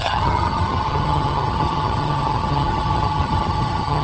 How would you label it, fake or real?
fake